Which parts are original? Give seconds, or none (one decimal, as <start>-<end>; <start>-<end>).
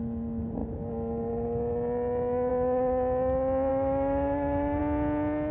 0.0-3.7; 4.8-5.5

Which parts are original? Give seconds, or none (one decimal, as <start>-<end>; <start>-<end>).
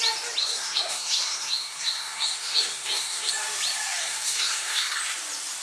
0.0-0.4; 3.3-4.0; 5.0-5.6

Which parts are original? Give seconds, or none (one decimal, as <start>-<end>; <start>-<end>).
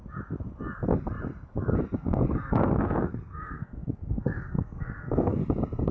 0.0-1.8; 5.4-5.9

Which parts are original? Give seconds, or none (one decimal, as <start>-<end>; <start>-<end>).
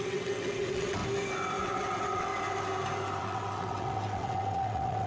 1.0-1.6; 2.3-3.2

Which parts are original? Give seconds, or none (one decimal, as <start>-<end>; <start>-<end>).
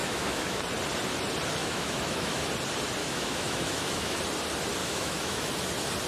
0.6-1.6; 2.5-3.0; 4.2-4.8; 5.5-6.1